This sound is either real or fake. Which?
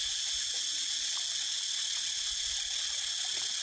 real